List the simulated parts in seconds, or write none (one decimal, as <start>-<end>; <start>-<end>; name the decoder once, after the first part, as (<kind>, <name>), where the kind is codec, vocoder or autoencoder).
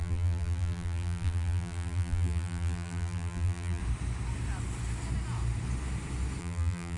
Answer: 0.0-3.8 (vocoder, BigVGAN v2); 6.4-7.0